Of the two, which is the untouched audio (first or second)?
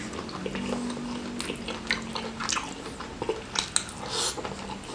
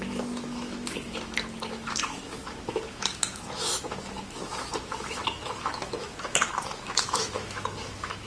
first